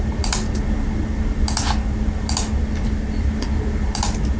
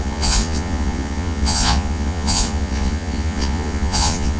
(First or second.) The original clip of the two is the first